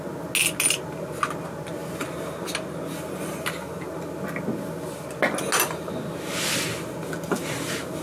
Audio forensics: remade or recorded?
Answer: recorded